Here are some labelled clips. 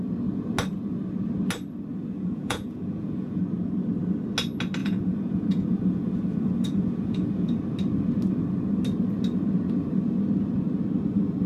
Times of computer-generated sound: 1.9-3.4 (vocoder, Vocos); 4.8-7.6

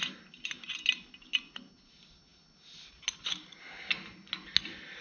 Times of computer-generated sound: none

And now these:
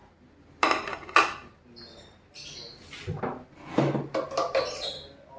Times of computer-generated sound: none